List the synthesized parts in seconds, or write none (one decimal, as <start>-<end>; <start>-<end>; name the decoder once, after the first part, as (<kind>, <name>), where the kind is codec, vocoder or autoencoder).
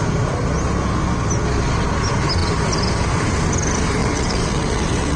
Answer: 4.0-5.2 (vocoder, WaveNeXt)